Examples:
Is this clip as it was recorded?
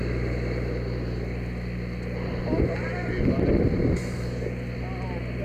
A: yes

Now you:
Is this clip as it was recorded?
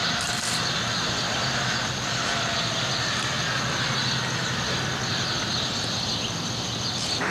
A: yes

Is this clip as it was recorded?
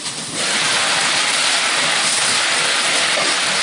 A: yes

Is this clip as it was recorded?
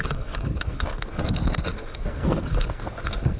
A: no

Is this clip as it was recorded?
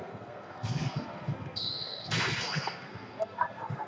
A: no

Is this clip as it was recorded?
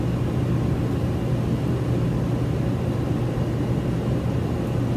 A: yes